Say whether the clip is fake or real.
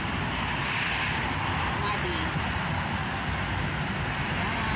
real